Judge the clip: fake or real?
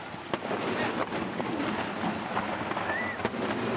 real